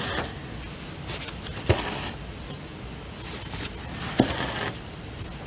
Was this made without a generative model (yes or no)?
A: yes